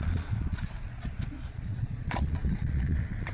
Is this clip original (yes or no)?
no